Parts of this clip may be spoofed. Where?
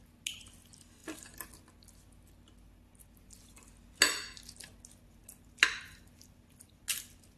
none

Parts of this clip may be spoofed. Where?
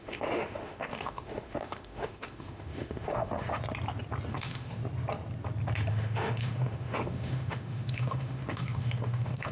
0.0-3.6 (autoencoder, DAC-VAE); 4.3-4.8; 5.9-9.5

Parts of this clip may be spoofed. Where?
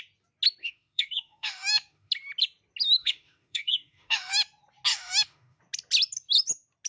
0.6-2.1 (autoencoder, DAC-VAE); 3.0-4.3; 4.9-5.6